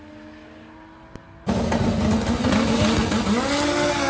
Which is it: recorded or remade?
recorded